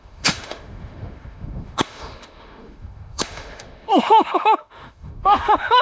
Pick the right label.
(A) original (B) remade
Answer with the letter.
B